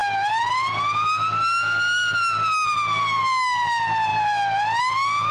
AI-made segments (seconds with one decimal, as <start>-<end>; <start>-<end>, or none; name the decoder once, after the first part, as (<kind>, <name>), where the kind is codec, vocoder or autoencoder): none